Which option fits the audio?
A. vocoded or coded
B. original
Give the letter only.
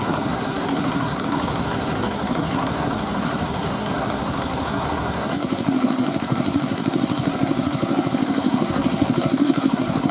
A